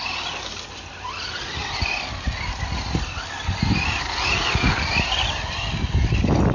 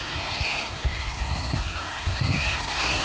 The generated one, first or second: second